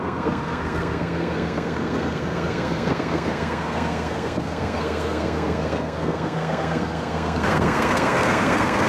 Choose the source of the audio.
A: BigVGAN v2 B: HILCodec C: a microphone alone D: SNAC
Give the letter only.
D